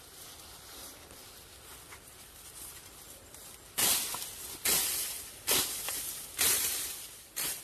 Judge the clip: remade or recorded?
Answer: recorded